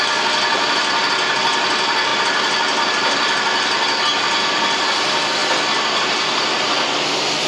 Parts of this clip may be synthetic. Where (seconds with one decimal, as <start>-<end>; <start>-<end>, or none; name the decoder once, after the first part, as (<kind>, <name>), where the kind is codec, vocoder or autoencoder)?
none